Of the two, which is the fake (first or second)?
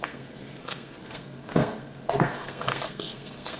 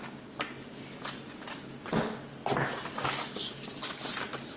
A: first